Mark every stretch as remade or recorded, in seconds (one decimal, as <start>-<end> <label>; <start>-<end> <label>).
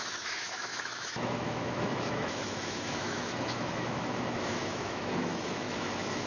0.0-6.3 remade